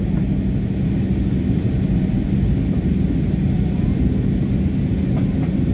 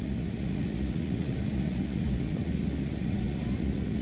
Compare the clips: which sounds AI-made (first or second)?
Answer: second